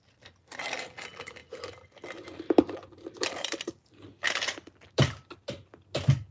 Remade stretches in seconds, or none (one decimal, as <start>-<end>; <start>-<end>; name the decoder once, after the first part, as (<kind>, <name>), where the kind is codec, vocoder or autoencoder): none